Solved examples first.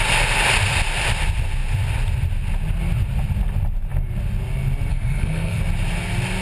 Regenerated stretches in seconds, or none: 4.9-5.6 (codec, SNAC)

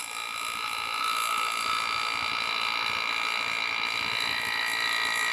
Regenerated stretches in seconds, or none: none

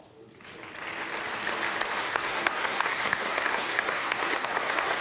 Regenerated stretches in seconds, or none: 2.0-5.0 (codec, SNAC)

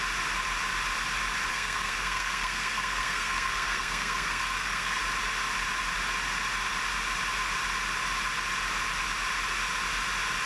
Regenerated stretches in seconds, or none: 1.5-5.0 (codec, SNAC)

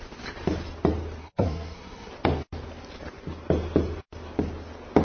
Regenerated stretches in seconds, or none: 1.2-2.1 (codec, SNAC)

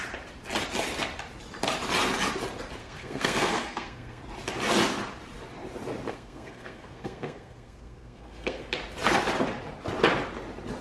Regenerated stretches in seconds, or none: 2.8-4.2 (codec, SNAC); 6.1-8.6

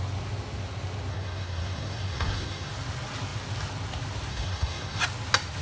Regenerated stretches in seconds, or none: 1.1-2.7 (codec, SNAC); 4.3-5.0

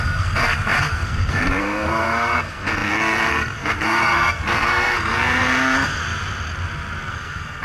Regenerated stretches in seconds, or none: 0.0-6.0 (codec, SNAC); 7.1-7.6